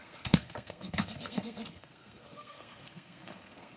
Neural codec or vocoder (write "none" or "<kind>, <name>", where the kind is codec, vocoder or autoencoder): codec, SNAC